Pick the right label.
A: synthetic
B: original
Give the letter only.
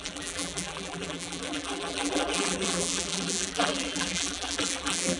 A